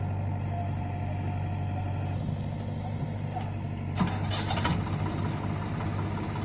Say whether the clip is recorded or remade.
recorded